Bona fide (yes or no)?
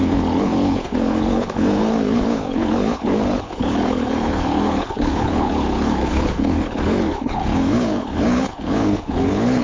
no